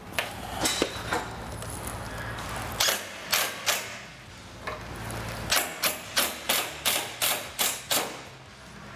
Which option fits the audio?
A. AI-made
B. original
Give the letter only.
B